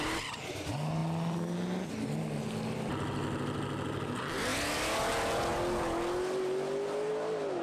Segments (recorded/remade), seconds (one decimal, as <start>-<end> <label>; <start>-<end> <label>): 0.0-7.6 recorded